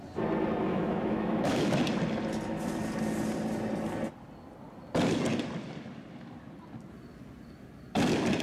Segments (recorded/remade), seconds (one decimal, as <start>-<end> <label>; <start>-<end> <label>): 0.0-0.7 recorded; 0.7-1.7 remade; 1.7-8.4 recorded